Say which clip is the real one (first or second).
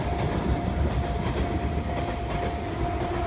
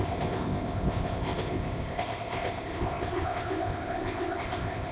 first